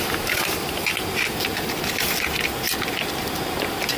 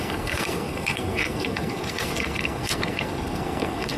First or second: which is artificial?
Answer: second